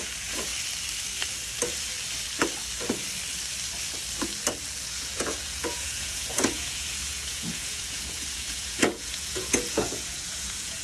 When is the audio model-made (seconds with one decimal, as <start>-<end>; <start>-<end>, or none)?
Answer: 0.0-0.5; 4.8-10.8